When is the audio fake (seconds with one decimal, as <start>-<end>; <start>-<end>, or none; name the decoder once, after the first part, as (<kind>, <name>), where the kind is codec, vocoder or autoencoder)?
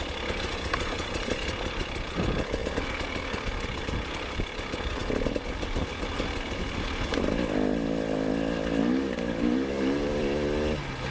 8.8-10.2 (codec, DAC)